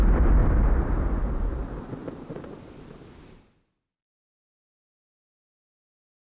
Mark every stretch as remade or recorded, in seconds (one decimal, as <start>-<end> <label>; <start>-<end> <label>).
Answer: 0.0-6.2 recorded